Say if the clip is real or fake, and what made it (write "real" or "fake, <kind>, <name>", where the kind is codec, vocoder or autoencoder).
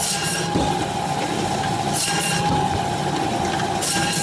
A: real